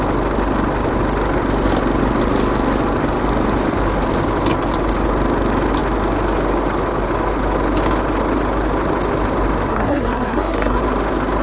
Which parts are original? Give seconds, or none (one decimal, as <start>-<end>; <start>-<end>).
0.0-9.7; 10.8-11.4